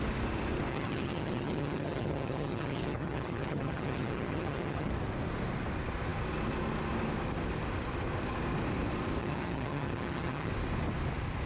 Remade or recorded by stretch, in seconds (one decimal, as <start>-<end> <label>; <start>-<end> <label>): 0.0-0.7 recorded; 0.7-4.9 remade; 4.9-9.2 recorded; 9.2-10.5 remade; 10.5-11.5 recorded